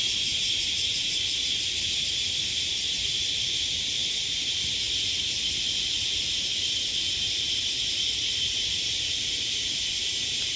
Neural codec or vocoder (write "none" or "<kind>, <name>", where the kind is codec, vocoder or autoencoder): vocoder, BigVGAN v2